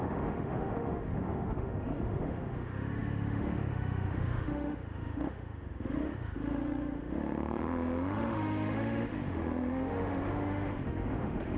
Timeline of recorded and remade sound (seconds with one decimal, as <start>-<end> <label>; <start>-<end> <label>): 0.0-11.6 remade